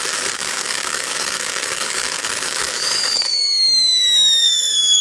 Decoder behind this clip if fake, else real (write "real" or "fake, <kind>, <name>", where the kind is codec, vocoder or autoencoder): fake, codec, DAC